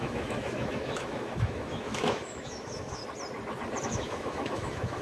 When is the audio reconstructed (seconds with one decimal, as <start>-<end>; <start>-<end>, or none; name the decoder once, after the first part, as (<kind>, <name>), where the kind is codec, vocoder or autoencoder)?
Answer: 0.0-3.0 (autoencoder, DAC-VAE); 3.8-5.0